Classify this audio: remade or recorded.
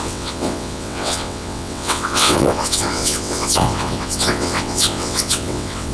remade